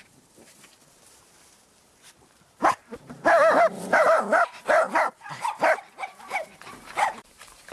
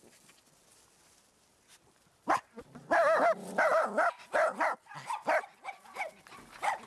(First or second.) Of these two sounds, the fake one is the first